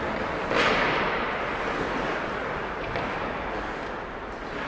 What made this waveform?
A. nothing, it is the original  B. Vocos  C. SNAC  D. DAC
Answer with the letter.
A